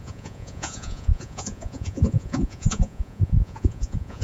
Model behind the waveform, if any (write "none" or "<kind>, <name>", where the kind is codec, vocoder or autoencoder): vocoder, Vocos